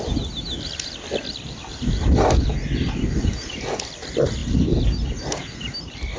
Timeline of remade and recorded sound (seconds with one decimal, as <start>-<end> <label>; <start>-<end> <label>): 0.0-6.2 recorded